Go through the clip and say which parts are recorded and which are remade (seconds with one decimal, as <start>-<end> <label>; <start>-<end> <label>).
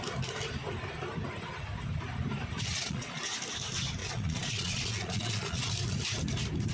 0.0-2.7 recorded; 2.7-3.2 remade; 3.2-4.0 recorded; 4.0-5.7 remade; 5.7-6.7 recorded